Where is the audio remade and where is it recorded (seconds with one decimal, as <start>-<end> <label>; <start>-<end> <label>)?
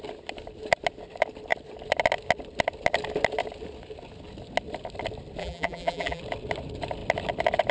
0.0-5.4 recorded; 5.4-6.2 remade; 6.2-7.7 recorded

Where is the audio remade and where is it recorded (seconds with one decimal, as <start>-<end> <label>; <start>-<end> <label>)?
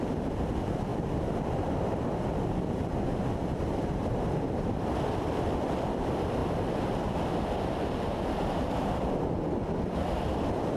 0.0-0.9 remade; 0.9-1.5 recorded; 1.5-6.4 remade; 6.4-9.3 recorded; 9.3-10.8 remade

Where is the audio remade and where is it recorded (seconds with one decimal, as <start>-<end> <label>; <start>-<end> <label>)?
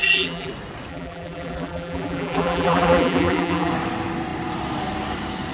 0.0-0.5 remade; 0.5-0.9 recorded; 0.9-3.7 remade; 3.7-5.5 recorded